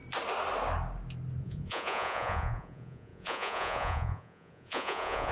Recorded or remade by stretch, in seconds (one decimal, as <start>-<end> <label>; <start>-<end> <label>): 0.0-1.4 recorded; 1.4-5.3 remade